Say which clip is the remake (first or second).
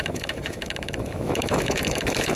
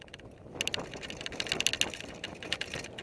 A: first